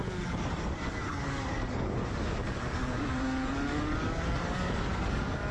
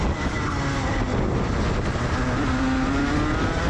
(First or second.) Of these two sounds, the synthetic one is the first